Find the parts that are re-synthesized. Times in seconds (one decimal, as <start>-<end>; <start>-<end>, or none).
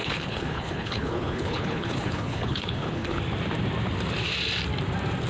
0.0-3.2